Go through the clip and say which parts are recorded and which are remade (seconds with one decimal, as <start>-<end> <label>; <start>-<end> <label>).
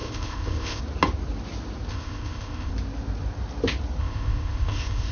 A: 0.0-0.8 remade; 0.8-1.9 recorded; 1.9-2.7 remade; 2.7-4.0 recorded; 4.0-5.1 remade